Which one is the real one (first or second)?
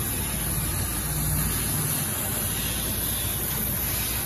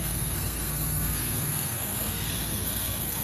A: first